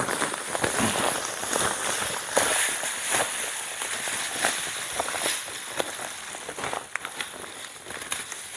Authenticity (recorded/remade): recorded